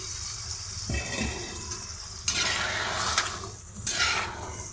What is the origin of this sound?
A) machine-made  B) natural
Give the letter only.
B